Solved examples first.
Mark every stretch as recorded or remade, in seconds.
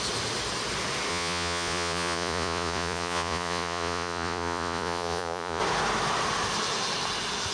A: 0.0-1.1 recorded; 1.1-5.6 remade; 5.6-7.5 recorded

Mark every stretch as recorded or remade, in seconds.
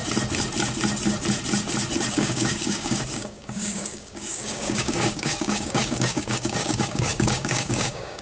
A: 0.0-2.1 recorded; 2.1-8.2 remade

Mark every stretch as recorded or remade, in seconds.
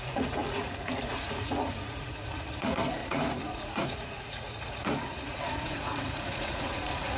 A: 0.0-7.2 remade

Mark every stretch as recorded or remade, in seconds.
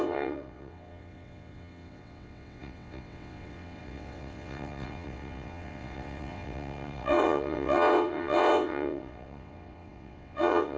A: 0.0-10.8 remade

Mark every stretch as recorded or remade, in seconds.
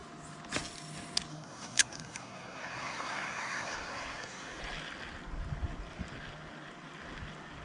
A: 0.0-1.3 recorded; 1.3-4.6 remade; 4.6-7.6 recorded